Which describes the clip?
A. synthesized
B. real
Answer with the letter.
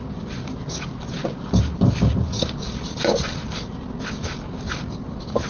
B